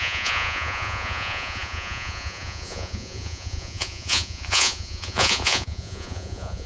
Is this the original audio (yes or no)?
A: no